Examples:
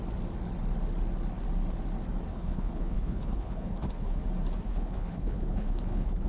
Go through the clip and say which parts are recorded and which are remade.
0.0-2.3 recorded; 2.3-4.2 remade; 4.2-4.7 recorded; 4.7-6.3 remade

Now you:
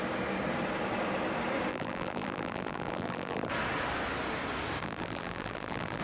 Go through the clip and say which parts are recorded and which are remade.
0.0-1.7 recorded; 1.7-3.5 remade; 3.5-4.8 recorded; 4.8-6.0 remade

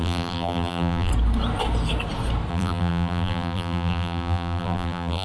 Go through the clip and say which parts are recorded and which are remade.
0.0-1.1 remade; 1.1-2.5 recorded; 2.5-5.2 remade

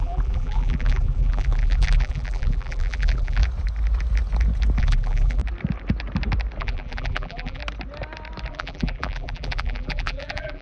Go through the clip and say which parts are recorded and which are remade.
0.0-3.4 remade; 3.4-4.8 recorded; 4.8-5.4 remade; 5.4-6.6 recorded; 6.6-7.6 remade; 7.6-8.5 recorded; 8.5-10.6 remade